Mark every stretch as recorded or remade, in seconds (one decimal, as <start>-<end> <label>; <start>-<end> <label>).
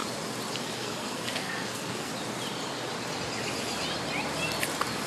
0.0-0.6 recorded; 0.6-2.1 remade; 2.1-5.1 recorded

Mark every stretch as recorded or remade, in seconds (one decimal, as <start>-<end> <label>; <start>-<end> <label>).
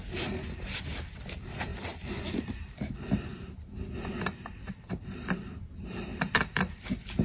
0.0-1.7 recorded; 1.7-2.4 remade; 2.4-7.2 recorded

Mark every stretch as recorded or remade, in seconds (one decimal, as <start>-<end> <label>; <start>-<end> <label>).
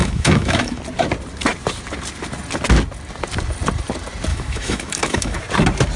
0.0-0.8 remade; 0.8-4.3 recorded; 4.3-5.4 remade; 5.4-6.0 recorded